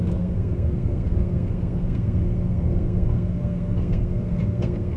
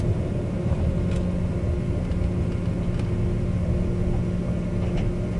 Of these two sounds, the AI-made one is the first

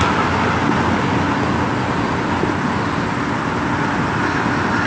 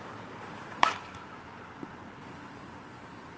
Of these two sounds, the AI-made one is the second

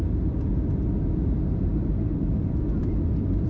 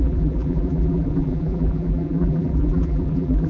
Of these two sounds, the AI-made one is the second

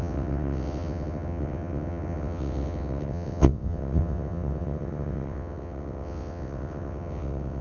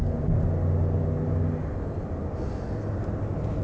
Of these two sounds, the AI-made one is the first